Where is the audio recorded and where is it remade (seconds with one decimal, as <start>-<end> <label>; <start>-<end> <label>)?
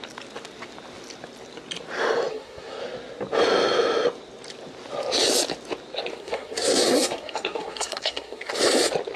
0.0-2.3 recorded; 2.3-2.8 remade; 2.8-6.1 recorded; 6.1-8.5 remade; 8.5-9.2 recorded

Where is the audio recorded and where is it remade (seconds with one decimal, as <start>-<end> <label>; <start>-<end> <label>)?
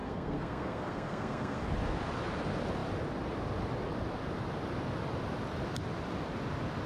0.0-1.6 remade; 1.6-6.9 recorded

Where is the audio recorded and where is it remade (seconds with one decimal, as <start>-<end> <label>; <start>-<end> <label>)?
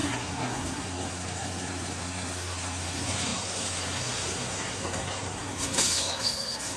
0.0-6.8 remade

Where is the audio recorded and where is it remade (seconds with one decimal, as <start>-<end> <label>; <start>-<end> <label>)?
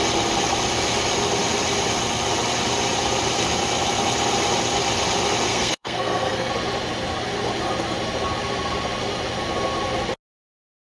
0.0-5.5 recorded; 5.5-6.5 remade; 6.5-10.9 recorded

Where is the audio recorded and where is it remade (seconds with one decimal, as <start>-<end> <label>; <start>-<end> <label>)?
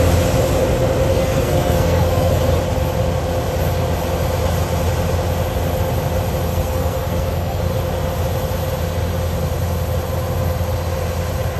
0.0-1.1 recorded; 1.1-2.4 remade; 2.4-6.5 recorded; 6.5-7.6 remade; 7.6-11.6 recorded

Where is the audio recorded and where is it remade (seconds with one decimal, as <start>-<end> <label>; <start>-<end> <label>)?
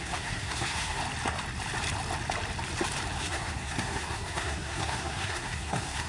0.0-1.0 remade; 1.0-3.2 recorded; 3.2-6.1 remade